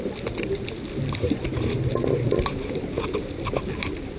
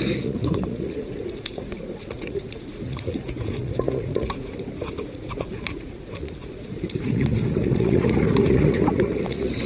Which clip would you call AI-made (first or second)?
second